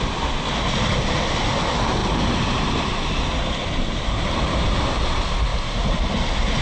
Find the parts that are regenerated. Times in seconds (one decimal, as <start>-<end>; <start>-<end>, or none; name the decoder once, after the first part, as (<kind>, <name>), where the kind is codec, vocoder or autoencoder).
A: 2.0-4.8 (vocoder, BigVGAN v2)